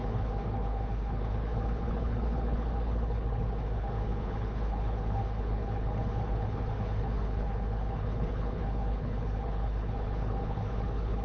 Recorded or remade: remade